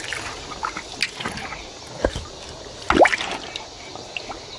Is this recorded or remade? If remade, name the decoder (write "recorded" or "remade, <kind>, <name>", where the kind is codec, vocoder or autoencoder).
recorded